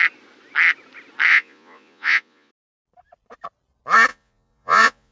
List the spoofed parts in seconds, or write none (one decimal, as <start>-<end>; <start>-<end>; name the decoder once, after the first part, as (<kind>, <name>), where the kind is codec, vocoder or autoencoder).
1.3-2.5 (vocoder, Vocos); 4.1-5.1